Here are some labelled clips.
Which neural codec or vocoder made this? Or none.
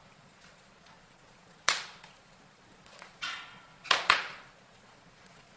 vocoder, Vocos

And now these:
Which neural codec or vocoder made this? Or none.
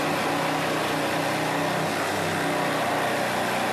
none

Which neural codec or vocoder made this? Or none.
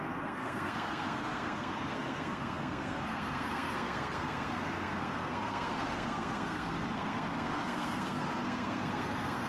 codec, SNAC